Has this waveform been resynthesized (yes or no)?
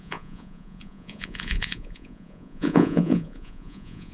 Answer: yes